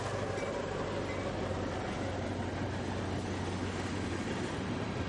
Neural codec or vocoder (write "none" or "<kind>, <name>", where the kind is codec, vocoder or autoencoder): none